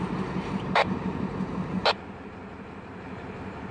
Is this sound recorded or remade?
remade